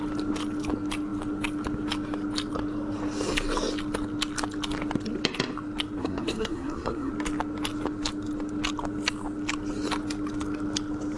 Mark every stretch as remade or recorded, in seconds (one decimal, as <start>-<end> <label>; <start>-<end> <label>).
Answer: 0.0-6.0 recorded; 6.0-7.1 remade; 7.1-11.2 recorded